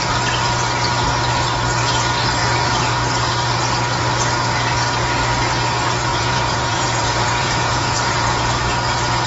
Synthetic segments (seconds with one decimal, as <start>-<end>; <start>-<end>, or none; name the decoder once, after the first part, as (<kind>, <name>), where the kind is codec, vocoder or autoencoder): 6.1-8.4 (vocoder, Vocos)